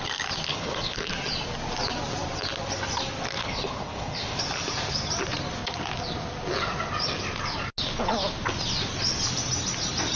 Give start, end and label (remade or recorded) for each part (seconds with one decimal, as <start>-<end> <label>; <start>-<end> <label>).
0.0-0.5 recorded; 0.5-1.1 remade; 1.1-3.4 recorded; 3.4-4.4 remade; 4.4-10.2 recorded